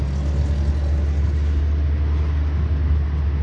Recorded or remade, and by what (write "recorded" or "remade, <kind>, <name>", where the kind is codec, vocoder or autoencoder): recorded